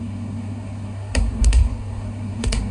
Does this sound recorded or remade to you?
remade